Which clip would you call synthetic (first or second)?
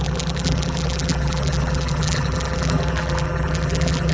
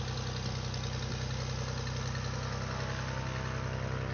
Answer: first